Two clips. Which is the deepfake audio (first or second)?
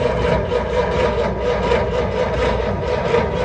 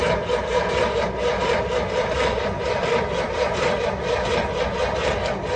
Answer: second